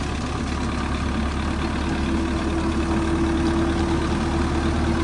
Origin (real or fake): real